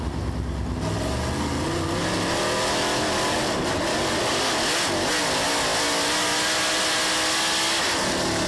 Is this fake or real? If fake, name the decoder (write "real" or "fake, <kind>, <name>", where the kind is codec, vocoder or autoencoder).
real